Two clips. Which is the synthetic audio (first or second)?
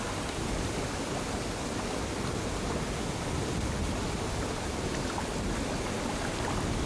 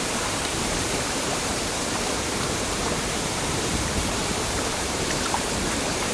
second